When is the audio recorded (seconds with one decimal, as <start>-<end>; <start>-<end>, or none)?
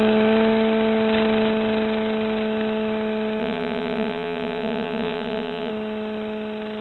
0.0-3.4; 5.7-6.8